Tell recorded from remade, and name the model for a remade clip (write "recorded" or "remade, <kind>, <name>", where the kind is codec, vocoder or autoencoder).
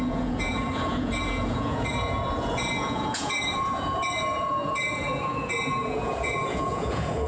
remade, vocoder, Vocos